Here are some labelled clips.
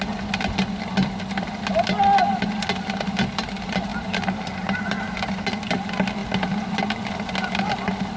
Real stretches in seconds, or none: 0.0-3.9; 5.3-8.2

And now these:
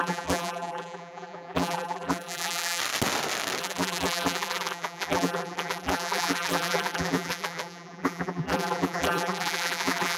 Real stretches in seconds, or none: 2.8-3.6

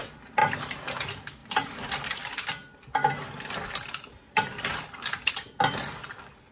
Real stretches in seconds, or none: 0.0-0.4; 0.9-1.4; 5.3-6.5